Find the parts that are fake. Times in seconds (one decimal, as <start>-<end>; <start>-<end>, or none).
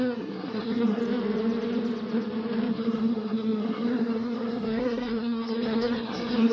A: 0.0-1.0; 2.7-6.5